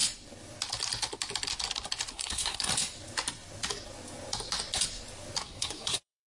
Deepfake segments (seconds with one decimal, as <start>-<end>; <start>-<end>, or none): 2.1-2.7; 5.4-6.3